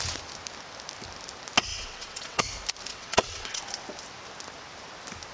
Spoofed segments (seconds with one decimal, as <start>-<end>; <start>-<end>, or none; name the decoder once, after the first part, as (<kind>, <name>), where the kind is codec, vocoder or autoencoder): 1.7-2.4 (vocoder, WaveNeXt); 2.9-3.6